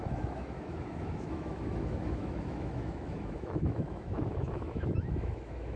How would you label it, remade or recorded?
remade